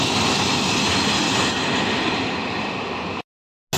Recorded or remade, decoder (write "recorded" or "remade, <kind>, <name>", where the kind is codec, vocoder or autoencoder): recorded